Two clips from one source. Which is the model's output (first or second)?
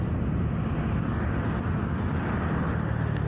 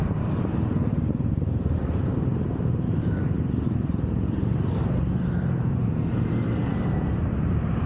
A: second